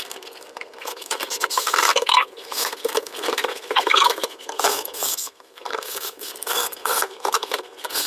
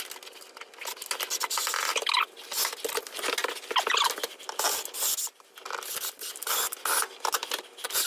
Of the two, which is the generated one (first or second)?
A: first